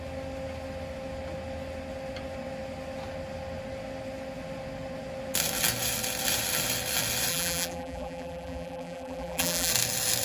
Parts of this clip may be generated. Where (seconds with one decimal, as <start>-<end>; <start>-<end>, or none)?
7.3-9.7